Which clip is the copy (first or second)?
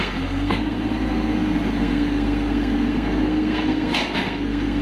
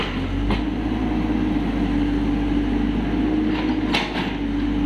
first